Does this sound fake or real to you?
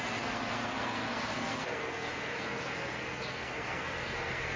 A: fake